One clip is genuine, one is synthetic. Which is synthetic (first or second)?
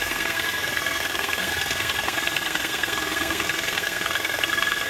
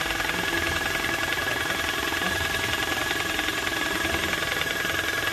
first